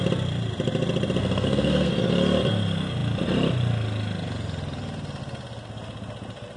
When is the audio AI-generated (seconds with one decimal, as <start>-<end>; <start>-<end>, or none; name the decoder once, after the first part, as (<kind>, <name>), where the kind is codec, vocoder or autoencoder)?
1.2-1.9 (codec, SNAC)